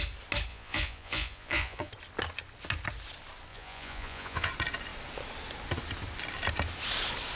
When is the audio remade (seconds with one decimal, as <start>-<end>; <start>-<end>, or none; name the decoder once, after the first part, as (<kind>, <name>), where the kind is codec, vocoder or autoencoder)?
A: 0.5-1.9 (vocoder, Vocos); 3.5-4.5